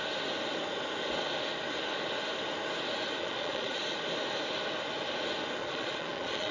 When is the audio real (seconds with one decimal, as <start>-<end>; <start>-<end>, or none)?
0.0-3.2; 3.8-5.6

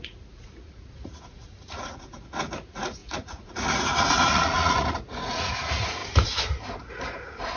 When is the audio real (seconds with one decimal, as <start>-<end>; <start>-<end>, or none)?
6.0-6.9

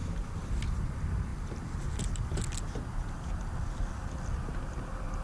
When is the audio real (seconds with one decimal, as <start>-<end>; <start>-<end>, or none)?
0.0-5.2

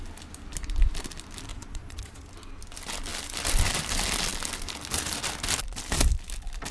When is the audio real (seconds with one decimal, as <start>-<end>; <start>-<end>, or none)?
0.0-1.5; 2.3-6.7

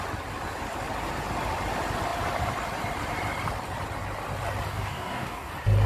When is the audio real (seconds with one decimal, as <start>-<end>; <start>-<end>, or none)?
0.0-4.7; 5.5-5.9

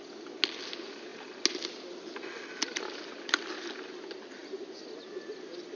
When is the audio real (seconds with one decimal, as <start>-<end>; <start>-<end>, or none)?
0.0-5.8